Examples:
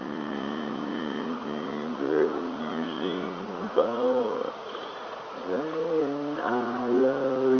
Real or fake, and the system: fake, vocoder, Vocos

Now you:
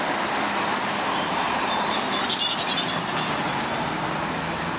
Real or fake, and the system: real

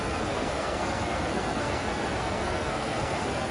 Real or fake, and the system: fake, codec, SNAC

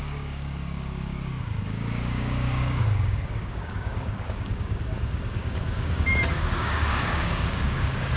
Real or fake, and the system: fake, codec, DAC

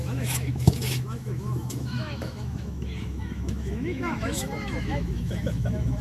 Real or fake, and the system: fake, autoencoder, DAC-VAE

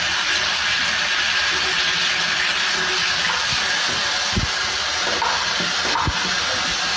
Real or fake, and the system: real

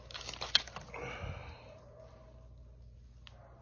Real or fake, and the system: real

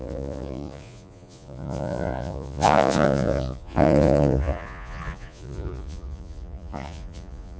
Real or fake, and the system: fake, vocoder, Vocos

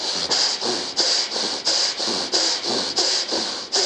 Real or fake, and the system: real